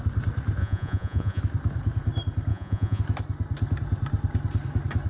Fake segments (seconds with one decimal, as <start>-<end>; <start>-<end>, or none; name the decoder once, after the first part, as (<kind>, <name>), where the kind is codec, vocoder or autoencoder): 0.6-1.4 (vocoder, Vocos); 2.5-3.0